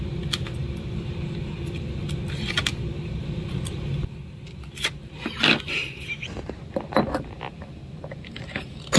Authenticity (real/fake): real